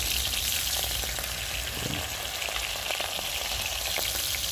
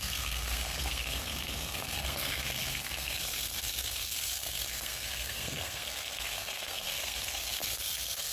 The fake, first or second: second